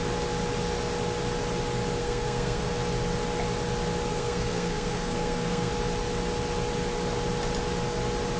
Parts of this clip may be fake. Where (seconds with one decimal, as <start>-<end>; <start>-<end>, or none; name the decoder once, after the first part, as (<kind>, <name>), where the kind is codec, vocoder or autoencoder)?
2.0-2.8 (codec, SNAC); 4.1-5.7